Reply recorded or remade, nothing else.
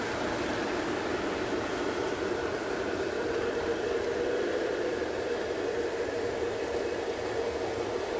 recorded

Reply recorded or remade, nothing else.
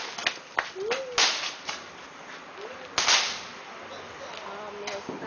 recorded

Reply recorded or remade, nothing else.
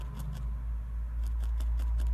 recorded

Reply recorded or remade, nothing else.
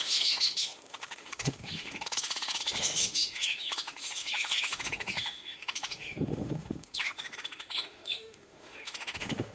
remade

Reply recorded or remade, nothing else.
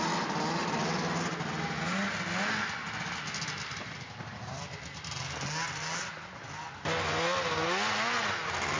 recorded